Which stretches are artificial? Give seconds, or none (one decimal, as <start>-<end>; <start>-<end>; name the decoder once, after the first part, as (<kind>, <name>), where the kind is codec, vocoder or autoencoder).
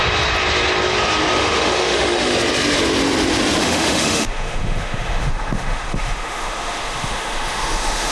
1.4-2.3 (autoencoder, DAC-VAE); 3.6-8.1